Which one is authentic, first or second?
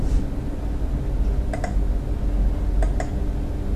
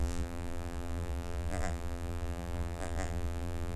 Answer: first